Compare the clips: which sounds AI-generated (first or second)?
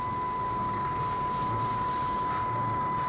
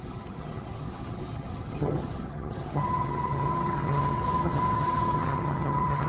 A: second